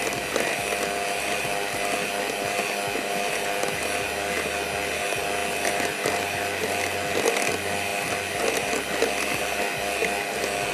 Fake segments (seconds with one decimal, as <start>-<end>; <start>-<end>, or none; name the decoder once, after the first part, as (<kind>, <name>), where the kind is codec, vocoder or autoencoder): none